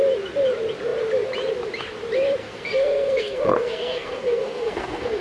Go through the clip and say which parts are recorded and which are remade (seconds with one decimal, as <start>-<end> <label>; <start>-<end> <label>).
0.0-2.4 recorded; 2.4-5.2 remade